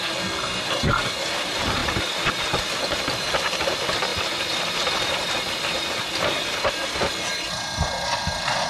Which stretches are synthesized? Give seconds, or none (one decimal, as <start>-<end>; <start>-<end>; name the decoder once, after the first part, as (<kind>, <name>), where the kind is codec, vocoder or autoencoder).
none